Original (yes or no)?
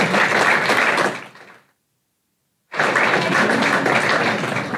yes